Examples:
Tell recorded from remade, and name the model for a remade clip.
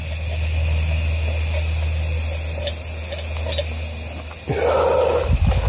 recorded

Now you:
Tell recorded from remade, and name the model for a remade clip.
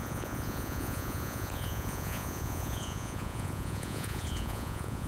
remade, vocoder, Vocos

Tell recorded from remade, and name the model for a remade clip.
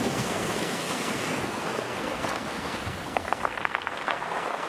remade, codec, SNAC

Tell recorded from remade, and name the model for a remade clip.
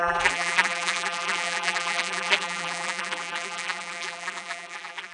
remade, vocoder, BigVGAN v2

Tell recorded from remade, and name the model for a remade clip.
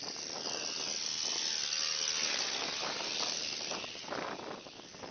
recorded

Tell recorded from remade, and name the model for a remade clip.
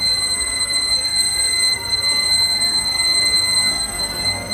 remade, codec, SNAC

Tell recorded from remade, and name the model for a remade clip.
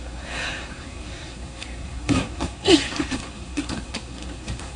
remade, codec, SNAC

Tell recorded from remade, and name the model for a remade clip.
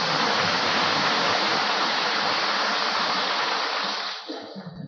recorded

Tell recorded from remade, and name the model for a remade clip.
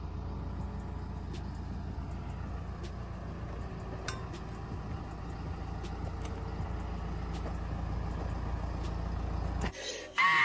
recorded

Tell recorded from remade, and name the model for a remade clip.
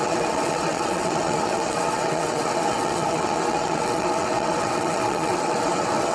remade, vocoder, WaveNeXt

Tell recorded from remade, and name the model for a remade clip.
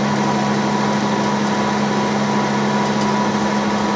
recorded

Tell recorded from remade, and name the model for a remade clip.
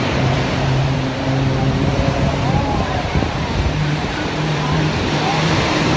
remade, vocoder, BigVGAN v2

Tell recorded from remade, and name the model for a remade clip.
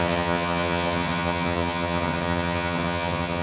remade, vocoder, HiFi-GAN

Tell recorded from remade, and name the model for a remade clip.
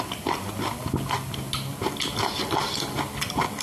recorded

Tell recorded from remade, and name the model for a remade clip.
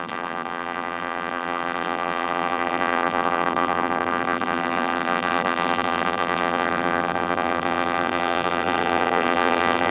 remade, vocoder, BigVGAN v2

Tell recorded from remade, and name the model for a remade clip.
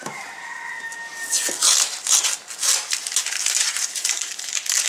recorded